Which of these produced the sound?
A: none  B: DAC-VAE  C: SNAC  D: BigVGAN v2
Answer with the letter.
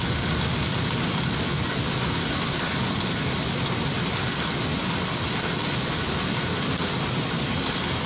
A